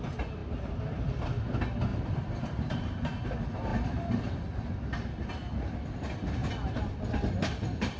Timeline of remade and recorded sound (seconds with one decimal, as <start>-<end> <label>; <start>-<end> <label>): 0.0-0.4 recorded; 0.4-1.2 remade; 1.2-1.9 recorded; 1.9-3.0 remade; 3.0-3.7 recorded; 3.7-5.3 remade; 5.3-6.4 recorded; 6.4-7.0 remade; 7.0-8.0 recorded